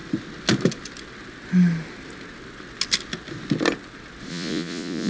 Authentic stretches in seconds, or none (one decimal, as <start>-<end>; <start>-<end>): 0.0-4.3